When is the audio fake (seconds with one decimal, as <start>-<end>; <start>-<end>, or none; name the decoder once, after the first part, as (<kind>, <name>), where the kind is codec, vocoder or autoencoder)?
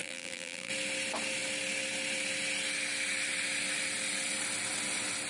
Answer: 0.0-0.7 (vocoder, BigVGAN v2)